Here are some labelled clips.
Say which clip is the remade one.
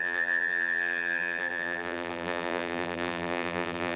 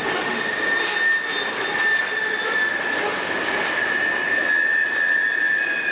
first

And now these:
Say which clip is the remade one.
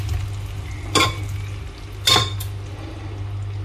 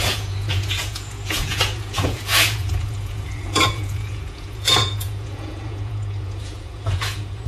second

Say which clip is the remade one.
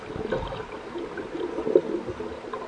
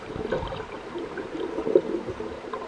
second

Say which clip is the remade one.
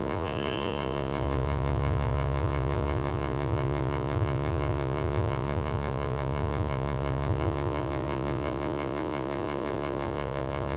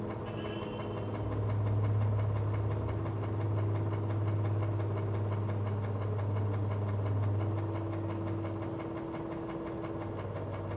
first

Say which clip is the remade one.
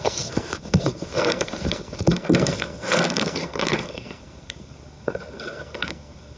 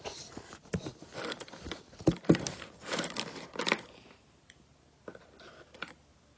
first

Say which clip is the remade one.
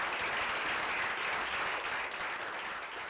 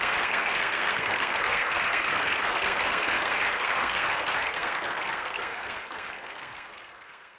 second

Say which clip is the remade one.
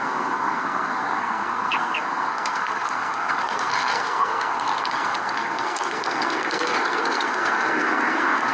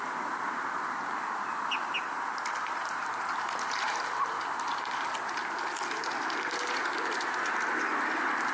first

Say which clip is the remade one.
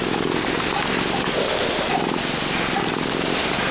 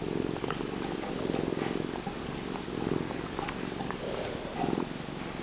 second